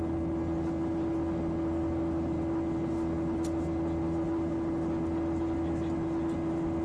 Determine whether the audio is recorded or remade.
recorded